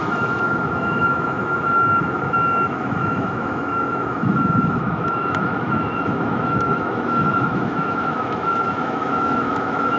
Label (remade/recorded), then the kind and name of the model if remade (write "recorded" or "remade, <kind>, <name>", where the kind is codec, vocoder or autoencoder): remade, autoencoder, DAC-VAE